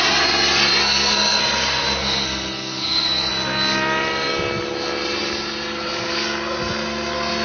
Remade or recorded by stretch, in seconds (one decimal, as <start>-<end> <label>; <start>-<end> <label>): 0.0-0.8 recorded; 0.8-1.4 remade; 1.4-2.0 recorded; 2.0-3.3 remade; 3.3-7.4 recorded